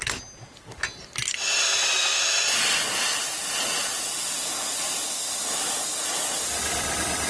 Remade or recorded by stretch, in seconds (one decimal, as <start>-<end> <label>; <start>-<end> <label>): 0.0-7.3 recorded